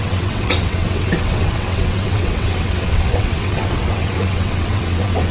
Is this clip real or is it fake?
fake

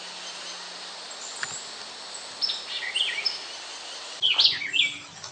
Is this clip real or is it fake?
real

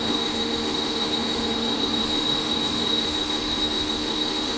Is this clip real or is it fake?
fake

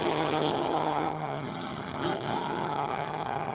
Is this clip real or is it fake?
fake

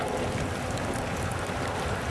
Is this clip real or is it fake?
real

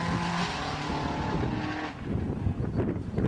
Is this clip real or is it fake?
real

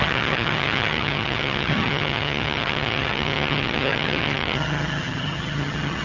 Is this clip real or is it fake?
fake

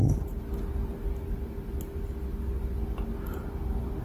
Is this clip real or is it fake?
real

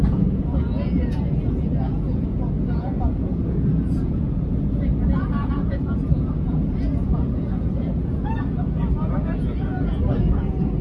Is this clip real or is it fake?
fake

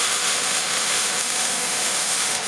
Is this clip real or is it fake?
fake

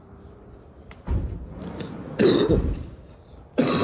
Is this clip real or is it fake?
fake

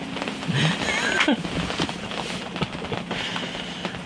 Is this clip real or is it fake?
real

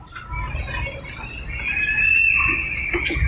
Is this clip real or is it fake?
real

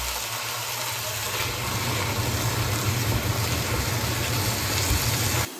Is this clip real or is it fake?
real